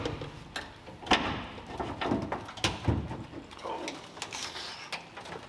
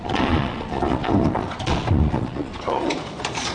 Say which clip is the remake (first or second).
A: second